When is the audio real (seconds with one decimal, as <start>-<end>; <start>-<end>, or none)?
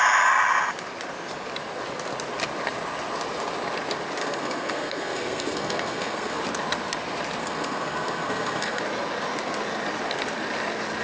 0.0-4.2; 6.4-7.4; 8.8-11.0